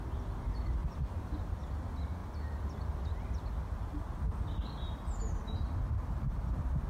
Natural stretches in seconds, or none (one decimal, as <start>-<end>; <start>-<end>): 0.0-0.8; 1.5-6.9